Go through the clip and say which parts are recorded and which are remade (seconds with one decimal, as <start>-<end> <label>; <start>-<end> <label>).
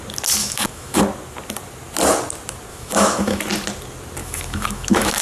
0.0-0.4 recorded; 0.4-1.0 remade; 1.0-2.7 recorded; 2.7-3.4 remade; 3.4-4.2 recorded; 4.2-5.2 remade